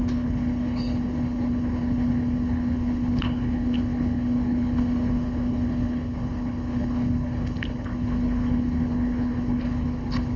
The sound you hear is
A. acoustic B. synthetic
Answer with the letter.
B